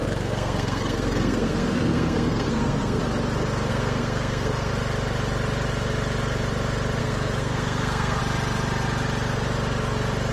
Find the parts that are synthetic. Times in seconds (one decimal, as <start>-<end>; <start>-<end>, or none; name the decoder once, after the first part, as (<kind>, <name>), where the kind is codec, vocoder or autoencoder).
0.0-3.0 (codec, SNAC); 3.7-4.7; 7.0-8.2